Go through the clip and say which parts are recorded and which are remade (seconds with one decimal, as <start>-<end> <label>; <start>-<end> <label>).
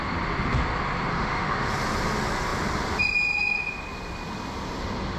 0.0-1.1 recorded; 1.1-1.7 remade; 1.7-5.2 recorded